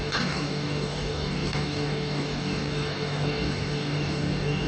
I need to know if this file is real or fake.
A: fake